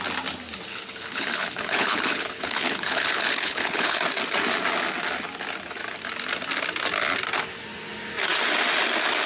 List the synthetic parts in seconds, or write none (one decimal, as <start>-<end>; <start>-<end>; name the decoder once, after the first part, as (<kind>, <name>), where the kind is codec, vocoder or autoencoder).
0.7-4.0 (codec, HILCodec)